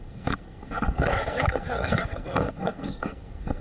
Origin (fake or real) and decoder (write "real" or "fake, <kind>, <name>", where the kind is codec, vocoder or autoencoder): fake, codec, SNAC